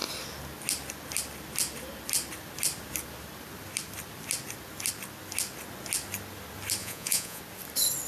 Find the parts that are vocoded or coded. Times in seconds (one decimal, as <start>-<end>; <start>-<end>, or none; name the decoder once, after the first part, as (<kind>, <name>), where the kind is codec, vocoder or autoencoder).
6.8-7.4 (vocoder, Vocos)